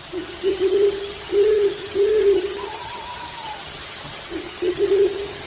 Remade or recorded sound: remade